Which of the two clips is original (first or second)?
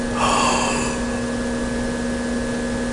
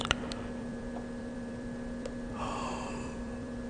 first